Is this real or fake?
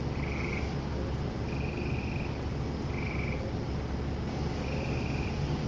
real